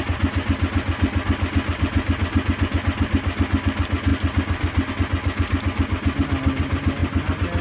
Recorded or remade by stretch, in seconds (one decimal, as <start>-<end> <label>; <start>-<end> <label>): 0.0-7.6 recorded